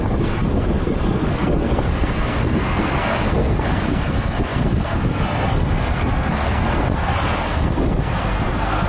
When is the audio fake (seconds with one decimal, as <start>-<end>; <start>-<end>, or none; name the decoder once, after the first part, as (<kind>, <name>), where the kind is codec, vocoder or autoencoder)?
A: 0.0-8.9 (codec, SNAC)